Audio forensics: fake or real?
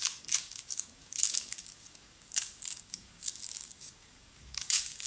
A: fake